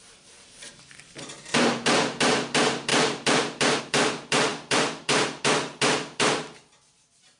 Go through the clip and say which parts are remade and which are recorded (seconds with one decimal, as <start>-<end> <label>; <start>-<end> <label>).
0.0-7.4 remade